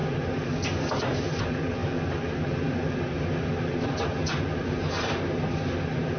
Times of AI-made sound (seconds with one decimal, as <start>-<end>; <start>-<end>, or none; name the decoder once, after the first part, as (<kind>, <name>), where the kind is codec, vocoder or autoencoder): none